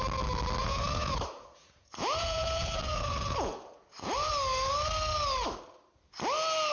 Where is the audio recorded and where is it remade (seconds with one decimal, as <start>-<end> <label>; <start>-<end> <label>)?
0.0-0.6 recorded; 0.6-4.3 remade; 4.3-6.7 recorded